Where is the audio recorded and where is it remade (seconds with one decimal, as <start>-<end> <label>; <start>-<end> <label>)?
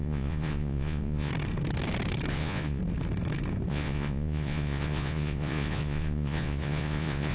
0.0-1.3 remade; 1.3-2.3 recorded; 2.3-2.8 remade; 2.8-3.7 recorded; 3.7-7.3 remade